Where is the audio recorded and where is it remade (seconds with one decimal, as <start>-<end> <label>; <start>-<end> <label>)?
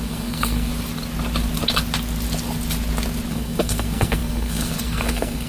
0.0-0.7 remade; 0.7-3.3 recorded; 3.3-5.5 remade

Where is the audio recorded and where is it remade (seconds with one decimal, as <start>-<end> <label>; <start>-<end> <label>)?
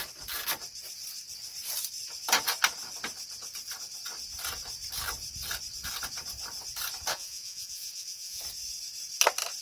0.0-7.1 recorded; 7.1-8.4 remade; 8.4-9.6 recorded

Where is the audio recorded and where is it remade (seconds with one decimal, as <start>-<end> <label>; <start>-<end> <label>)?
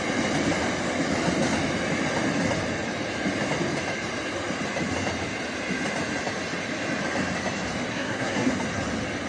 0.0-7.9 recorded; 7.9-8.5 remade; 8.5-9.3 recorded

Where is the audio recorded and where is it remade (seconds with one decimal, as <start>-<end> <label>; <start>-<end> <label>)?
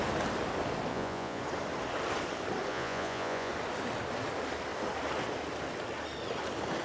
0.0-0.9 recorded; 0.9-1.4 remade; 1.4-2.7 recorded; 2.7-3.5 remade; 3.5-6.8 recorded